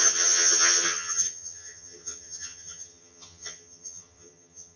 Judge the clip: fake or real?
fake